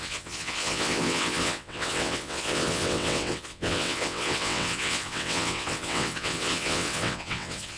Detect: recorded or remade remade